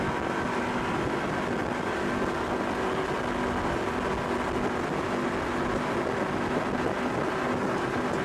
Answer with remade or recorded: recorded